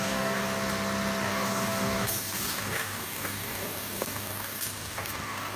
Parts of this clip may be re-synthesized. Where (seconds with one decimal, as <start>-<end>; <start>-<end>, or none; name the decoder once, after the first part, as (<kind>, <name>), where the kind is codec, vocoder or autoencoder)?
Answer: 0.0-0.4 (codec, DAC); 1.2-5.6